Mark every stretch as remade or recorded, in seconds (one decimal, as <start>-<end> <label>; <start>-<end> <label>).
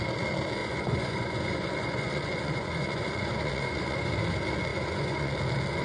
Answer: 0.0-0.6 recorded; 0.6-4.1 remade; 4.1-4.7 recorded; 4.7-5.3 remade; 5.3-5.8 recorded